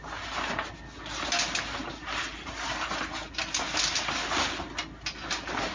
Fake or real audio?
real